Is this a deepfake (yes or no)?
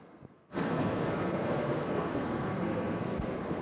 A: yes